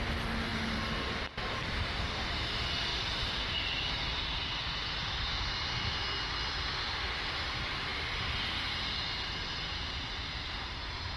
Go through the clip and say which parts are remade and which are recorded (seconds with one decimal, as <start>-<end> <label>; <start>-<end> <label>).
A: 0.0-2.9 recorded; 2.9-3.8 remade; 3.8-11.2 recorded